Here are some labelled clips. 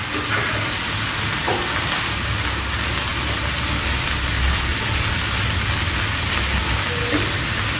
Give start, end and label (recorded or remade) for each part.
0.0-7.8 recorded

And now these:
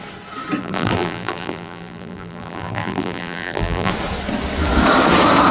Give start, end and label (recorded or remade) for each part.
0.0-0.6 recorded; 0.6-3.9 remade; 3.9-5.5 recorded

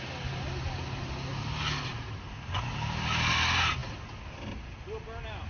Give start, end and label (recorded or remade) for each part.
0.0-1.9 recorded; 1.9-3.3 remade; 3.3-5.5 recorded

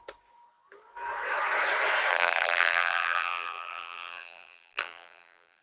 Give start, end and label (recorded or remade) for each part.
0.0-2.1 recorded; 2.1-5.6 remade